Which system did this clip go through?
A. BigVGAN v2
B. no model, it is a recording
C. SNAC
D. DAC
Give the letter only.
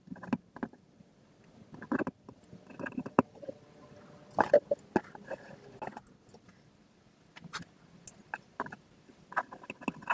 B